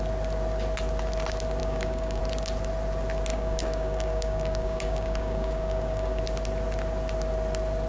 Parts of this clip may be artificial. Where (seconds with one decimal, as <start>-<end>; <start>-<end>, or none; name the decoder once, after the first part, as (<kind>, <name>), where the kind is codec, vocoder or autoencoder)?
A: 1.6-2.2 (codec, DAC); 3.3-6.2